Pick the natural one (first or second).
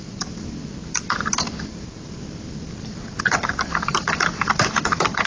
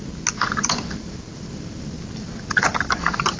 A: second